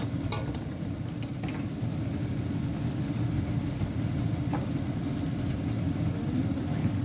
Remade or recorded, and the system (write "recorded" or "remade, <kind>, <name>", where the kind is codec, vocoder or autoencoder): recorded